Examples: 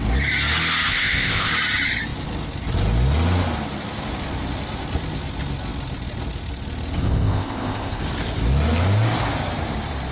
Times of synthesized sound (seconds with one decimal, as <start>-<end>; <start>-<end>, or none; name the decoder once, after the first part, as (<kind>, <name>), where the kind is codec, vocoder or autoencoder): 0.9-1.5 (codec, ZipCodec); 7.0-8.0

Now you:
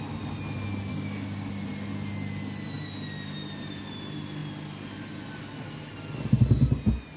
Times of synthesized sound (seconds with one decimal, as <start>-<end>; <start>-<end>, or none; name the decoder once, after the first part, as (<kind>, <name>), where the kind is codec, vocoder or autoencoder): 0.9-1.5 (codec, DAC)

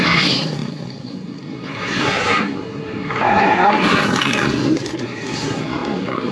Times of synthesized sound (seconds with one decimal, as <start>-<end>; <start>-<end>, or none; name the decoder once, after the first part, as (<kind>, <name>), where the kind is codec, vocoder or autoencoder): 0.0-6.3 (codec, SNAC)

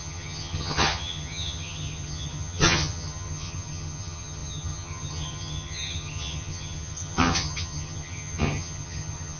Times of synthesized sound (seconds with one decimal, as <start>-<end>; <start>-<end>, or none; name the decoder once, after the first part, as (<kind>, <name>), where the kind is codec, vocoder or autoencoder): 0.0-9.4 (vocoder, HiFi-GAN)

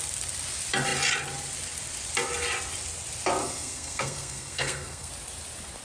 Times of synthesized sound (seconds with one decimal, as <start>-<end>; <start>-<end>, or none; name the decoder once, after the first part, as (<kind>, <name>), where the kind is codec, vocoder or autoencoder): 3.4-5.1 (codec, SNAC)

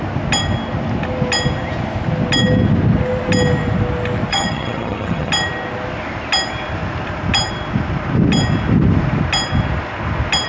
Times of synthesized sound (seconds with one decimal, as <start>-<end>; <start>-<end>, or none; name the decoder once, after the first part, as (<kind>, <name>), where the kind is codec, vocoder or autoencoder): 4.3-5.3 (vocoder, HiFi-GAN)